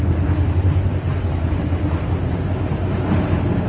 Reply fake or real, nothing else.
real